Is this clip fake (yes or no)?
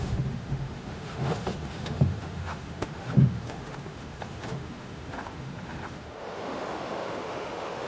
yes